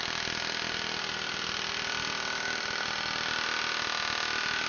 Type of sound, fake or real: real